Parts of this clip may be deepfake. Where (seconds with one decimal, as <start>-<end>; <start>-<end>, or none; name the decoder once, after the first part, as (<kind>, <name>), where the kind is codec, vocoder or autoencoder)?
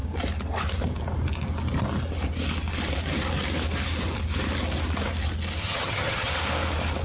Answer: 5.6-6.3 (vocoder, HiFi-GAN)